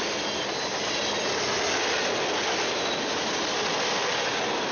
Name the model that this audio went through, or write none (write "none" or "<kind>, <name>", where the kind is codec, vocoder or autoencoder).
none